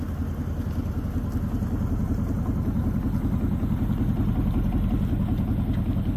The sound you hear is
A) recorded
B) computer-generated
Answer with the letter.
A